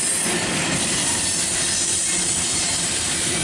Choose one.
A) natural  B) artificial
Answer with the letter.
B